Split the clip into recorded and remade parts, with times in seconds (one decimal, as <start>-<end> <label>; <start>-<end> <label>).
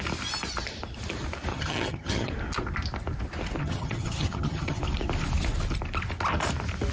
0.0-1.5 recorded; 1.5-2.3 remade; 2.3-3.6 recorded; 3.6-4.8 remade; 4.8-6.9 recorded